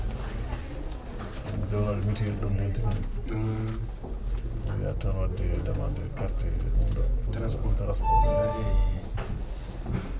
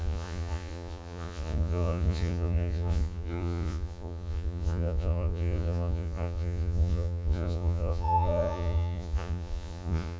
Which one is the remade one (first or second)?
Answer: second